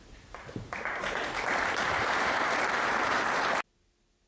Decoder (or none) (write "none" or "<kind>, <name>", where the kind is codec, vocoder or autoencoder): none